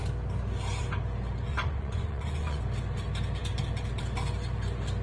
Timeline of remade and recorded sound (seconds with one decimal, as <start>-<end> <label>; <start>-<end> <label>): 0.0-1.5 recorded; 1.5-2.6 remade; 2.6-5.0 recorded